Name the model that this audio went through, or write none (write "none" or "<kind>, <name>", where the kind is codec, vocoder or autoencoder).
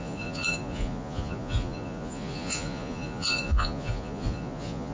vocoder, Vocos